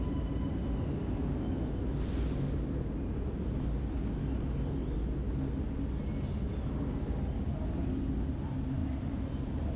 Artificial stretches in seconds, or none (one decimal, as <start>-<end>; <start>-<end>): none